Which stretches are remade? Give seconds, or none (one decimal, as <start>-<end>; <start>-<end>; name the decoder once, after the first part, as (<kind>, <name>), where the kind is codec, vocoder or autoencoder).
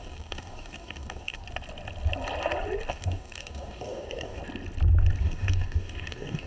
0.0-1.4 (codec, DAC); 2.9-4.4; 5.2-6.5